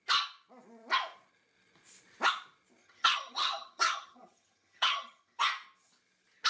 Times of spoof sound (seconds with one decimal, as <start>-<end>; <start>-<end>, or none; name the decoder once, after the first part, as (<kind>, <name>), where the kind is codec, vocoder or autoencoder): 2.8-5.4 (vocoder, HiFi-GAN)